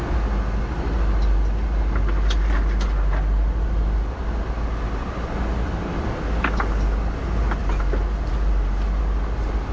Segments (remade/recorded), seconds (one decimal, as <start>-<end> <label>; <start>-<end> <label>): 0.0-9.7 recorded